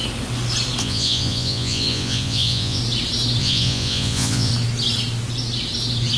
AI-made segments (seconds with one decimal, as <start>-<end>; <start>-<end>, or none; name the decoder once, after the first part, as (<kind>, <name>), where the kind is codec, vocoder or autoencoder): 0.8-2.8 (vocoder, Vocos); 3.4-4.5